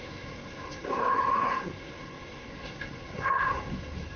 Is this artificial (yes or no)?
yes